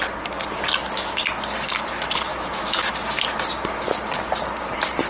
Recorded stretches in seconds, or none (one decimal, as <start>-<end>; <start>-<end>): 0.0-2.3; 2.9-5.1